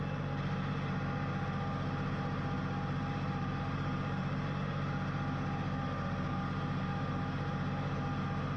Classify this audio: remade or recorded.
recorded